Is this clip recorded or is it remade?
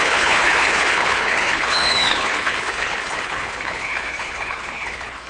remade